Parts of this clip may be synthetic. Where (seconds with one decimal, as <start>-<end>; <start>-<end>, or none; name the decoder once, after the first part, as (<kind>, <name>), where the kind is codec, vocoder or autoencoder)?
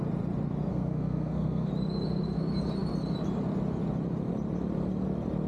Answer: 0.7-1.7 (codec, SNAC)